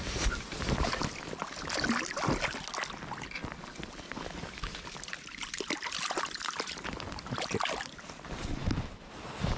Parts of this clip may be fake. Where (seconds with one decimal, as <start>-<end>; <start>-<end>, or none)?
none